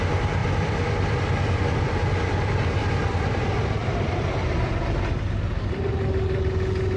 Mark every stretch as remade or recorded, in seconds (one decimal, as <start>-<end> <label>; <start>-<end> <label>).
0.0-0.4 recorded; 0.4-2.9 remade; 2.9-3.8 recorded; 3.8-4.7 remade; 4.7-7.0 recorded